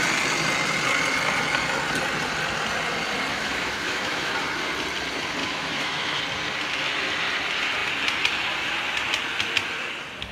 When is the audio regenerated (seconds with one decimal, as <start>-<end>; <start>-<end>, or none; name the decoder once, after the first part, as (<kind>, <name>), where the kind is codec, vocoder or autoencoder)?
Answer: 3.3-4.3 (autoencoder, DAC-VAE); 5.4-6.2

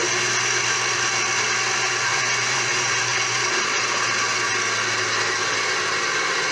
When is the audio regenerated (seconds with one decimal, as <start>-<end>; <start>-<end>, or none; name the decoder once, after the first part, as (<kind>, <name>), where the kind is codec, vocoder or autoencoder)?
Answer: 2.1-3.0 (vocoder, Vocos)

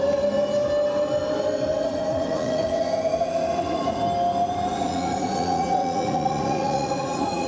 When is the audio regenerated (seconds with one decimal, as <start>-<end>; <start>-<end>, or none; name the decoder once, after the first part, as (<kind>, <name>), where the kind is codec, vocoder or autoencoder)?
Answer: 1.8-4.0 (vocoder, Vocos); 4.7-7.5

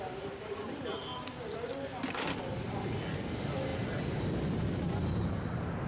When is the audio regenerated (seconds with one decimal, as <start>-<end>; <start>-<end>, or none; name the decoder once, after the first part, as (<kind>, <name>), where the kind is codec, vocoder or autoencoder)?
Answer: none

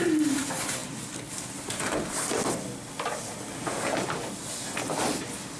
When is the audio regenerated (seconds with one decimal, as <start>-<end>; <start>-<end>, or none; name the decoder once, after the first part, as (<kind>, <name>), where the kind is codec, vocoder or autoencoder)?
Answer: none

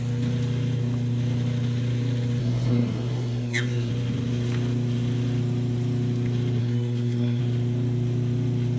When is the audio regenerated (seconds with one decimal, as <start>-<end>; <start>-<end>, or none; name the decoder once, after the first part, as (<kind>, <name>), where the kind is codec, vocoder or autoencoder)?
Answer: 2.4-3.9 (codec, SNAC); 6.6-7.4